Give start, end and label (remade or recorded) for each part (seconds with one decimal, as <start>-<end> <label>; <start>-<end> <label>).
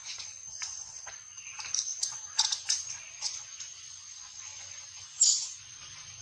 0.0-1.0 remade; 1.0-1.9 recorded; 1.9-5.6 remade; 5.6-6.2 recorded